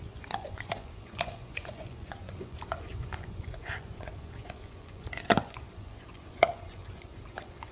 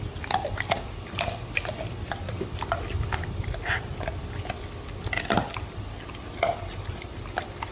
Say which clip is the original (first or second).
second